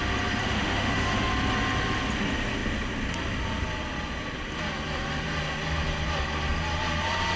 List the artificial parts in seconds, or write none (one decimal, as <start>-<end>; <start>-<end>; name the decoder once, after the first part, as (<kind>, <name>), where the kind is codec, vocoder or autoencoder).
0.4-1.3 (autoencoder, DAC-VAE)